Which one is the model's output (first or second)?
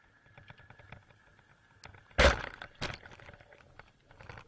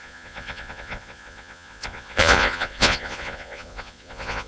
second